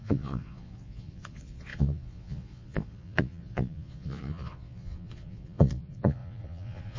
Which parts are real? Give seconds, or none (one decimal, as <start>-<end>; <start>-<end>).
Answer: none